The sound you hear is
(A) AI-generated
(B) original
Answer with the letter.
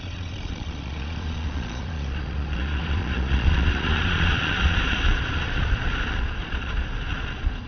A